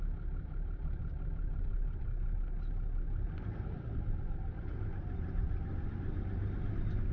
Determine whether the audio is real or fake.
real